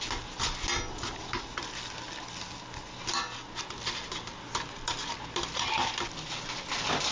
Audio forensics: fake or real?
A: real